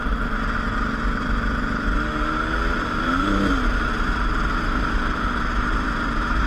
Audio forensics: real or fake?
fake